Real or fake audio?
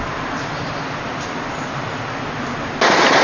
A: real